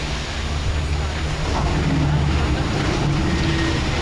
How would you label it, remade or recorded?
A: recorded